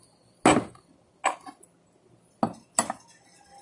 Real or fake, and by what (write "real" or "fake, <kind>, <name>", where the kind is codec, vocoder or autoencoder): real